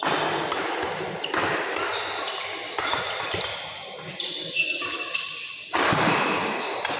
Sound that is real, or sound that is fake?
real